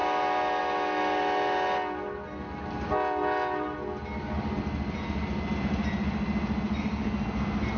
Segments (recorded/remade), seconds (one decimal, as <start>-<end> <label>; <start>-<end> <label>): 0.0-7.8 recorded